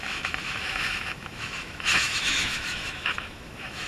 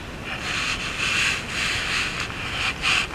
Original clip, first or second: second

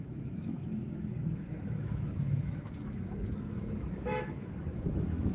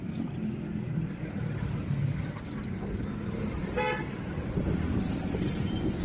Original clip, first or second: second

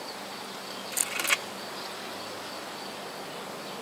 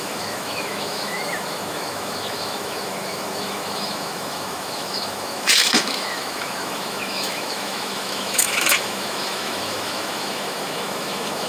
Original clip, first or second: first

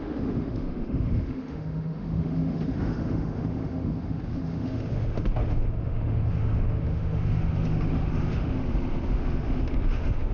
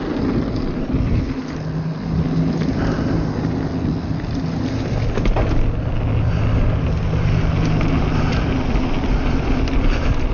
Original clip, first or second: second